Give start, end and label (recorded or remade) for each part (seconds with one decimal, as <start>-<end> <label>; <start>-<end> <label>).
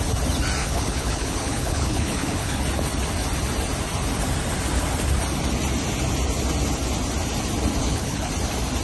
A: 0.0-0.6 recorded; 0.6-2.6 remade; 2.6-7.8 recorded; 7.8-8.3 remade; 8.3-8.8 recorded